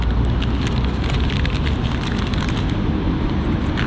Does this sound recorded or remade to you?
recorded